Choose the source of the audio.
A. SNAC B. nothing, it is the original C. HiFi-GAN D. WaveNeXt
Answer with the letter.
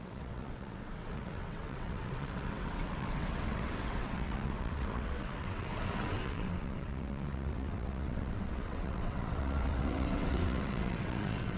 D